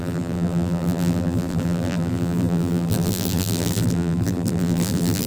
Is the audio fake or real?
fake